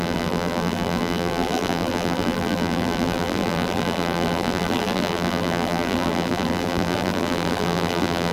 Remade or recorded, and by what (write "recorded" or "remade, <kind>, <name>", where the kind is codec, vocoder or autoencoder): remade, vocoder, BigVGAN v2